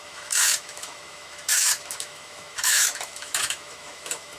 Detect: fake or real fake